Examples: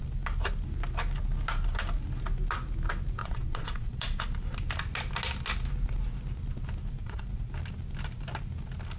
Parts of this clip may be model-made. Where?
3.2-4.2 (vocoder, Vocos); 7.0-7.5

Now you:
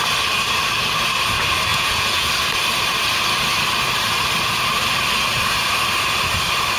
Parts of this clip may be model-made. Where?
1.7-2.3 (vocoder, Vocos)

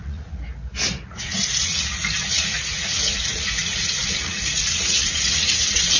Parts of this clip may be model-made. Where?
0.0-0.4 (vocoder, Vocos); 1.1-6.0